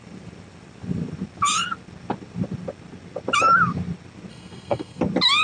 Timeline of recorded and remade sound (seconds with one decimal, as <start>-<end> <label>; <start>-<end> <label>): 0.0-4.3 recorded; 4.3-5.0 remade; 5.0-5.4 recorded